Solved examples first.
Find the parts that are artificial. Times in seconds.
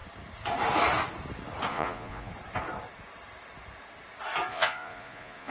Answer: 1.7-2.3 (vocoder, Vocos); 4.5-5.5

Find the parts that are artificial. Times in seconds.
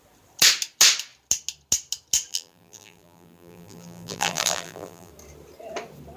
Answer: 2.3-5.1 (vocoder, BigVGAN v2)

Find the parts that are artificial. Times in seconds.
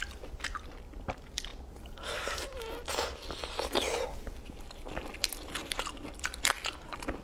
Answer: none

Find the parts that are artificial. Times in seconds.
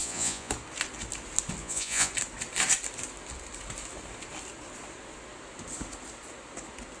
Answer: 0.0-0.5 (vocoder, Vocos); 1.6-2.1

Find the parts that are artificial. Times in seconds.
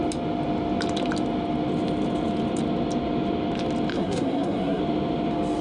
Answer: 3.9-4.8 (codec, SNAC)